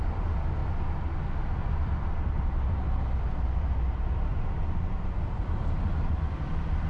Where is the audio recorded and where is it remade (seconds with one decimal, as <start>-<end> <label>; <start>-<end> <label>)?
0.0-6.9 recorded